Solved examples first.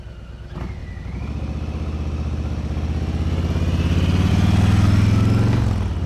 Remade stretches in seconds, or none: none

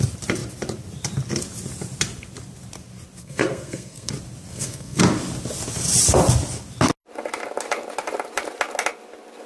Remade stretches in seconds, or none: 3.2-4.1 (codec, SNAC); 4.5-5.0

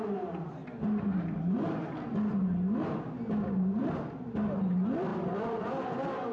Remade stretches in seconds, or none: none

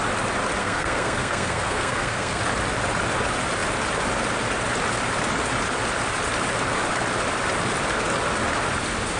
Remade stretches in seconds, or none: 0.6-2.4 (codec, SNAC)

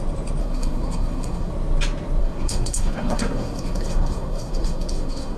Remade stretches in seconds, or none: 0.4-1.5 (codec, SNAC); 2.2-5.4